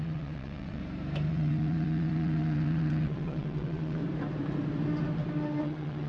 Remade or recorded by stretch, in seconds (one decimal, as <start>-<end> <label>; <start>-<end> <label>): 0.0-0.8 remade; 0.8-1.3 recorded; 1.3-4.0 remade; 4.0-5.6 recorded; 5.6-6.1 remade